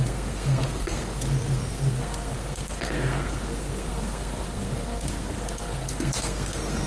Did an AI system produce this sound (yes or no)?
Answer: yes